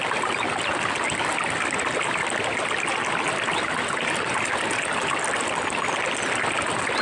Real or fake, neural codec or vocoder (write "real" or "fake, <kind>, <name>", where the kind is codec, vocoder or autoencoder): real